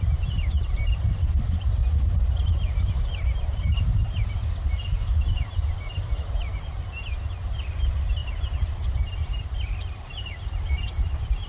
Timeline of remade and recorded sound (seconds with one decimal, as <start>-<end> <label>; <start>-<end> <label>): 0.0-1.8 remade; 1.8-2.9 recorded; 2.9-11.5 remade